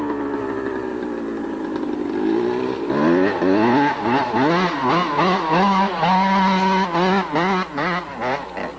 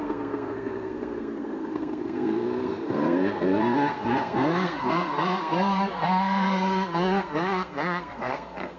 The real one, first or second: first